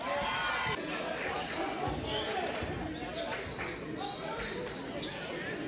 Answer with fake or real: real